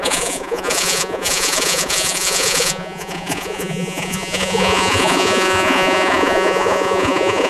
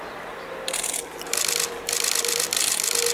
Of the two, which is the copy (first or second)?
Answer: first